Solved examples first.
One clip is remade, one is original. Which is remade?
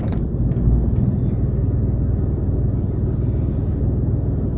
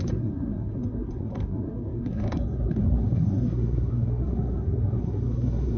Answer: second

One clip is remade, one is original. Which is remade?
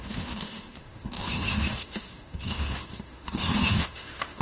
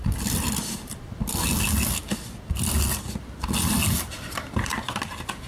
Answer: first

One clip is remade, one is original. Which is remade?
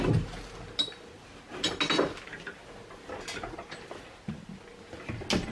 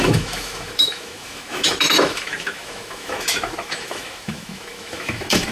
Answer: second